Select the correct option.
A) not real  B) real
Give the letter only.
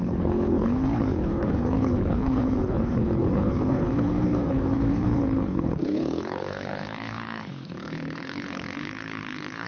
A